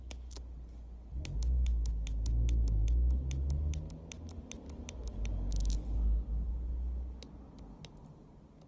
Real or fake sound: real